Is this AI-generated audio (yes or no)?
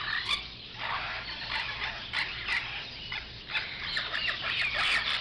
yes